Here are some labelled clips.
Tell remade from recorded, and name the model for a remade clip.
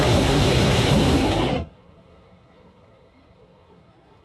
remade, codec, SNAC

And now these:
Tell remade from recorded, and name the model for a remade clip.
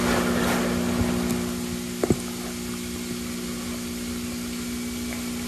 recorded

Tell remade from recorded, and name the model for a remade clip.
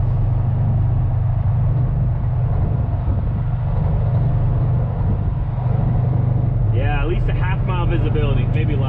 recorded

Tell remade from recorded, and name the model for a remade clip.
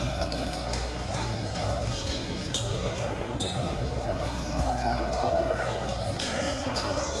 remade, codec, SNAC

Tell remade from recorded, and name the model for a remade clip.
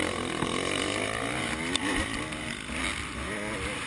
recorded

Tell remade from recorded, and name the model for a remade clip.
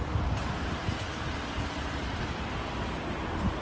recorded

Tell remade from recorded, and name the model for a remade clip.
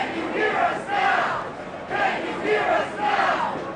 recorded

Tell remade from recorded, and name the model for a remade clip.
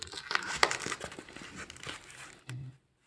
recorded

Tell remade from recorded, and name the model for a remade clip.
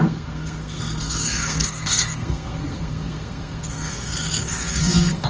remade, codec, SNAC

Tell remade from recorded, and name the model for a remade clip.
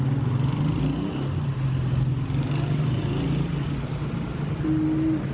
recorded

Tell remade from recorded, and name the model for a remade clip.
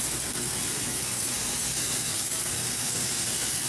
remade, codec, SNAC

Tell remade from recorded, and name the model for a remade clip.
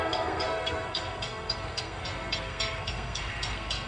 remade, codec, SNAC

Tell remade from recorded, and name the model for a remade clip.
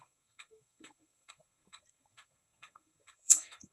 remade, codec, SNAC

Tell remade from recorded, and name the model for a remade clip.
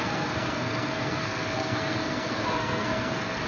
remade, codec, SNAC